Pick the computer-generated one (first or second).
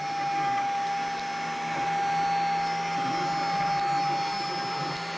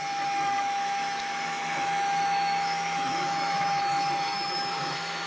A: second